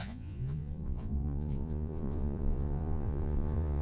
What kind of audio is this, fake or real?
fake